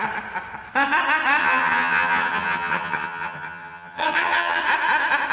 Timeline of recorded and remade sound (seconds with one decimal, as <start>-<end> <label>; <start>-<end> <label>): 0.0-1.4 recorded; 1.4-4.6 remade; 4.6-5.3 recorded